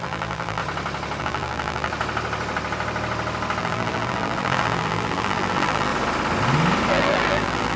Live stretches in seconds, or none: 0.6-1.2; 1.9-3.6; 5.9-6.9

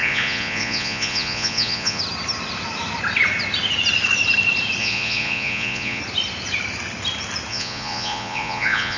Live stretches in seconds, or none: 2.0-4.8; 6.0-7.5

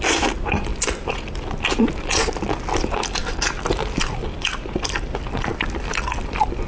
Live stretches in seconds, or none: 0.0-6.7

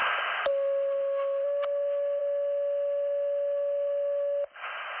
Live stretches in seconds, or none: 0.0-5.0